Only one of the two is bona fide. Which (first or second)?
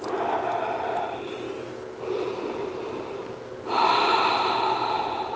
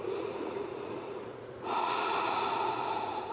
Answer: first